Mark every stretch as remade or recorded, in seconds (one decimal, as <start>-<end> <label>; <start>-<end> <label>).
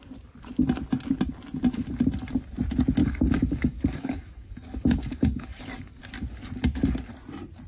0.0-3.0 recorded; 3.0-6.0 remade; 6.0-7.7 recorded